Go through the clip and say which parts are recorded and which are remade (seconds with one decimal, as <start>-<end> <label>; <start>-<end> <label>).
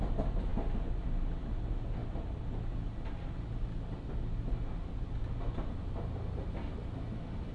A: 0.0-7.5 recorded